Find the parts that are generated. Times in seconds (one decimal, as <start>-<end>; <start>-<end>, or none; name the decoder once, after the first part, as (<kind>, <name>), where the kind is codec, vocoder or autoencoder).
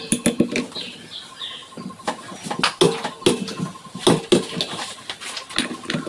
none